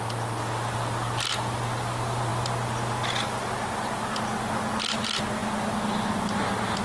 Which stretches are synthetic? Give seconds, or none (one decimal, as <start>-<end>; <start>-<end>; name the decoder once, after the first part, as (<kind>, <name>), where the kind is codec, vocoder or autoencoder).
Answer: none